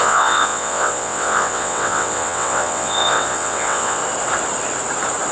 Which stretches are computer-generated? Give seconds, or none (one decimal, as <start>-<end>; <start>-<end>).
0.0-4.0